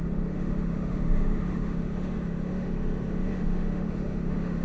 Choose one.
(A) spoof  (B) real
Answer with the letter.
A